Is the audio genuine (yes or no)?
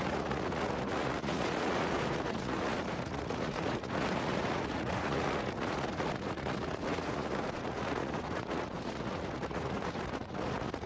no